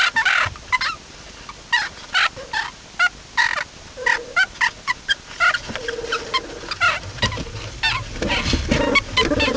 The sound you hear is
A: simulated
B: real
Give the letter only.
B